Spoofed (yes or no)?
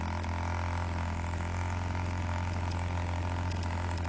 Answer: no